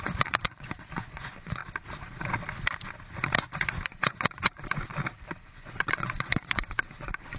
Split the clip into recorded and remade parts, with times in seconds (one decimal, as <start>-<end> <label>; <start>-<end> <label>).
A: 0.0-1.6 remade; 1.6-3.4 recorded; 3.4-4.9 remade; 4.9-5.5 recorded; 5.5-7.4 remade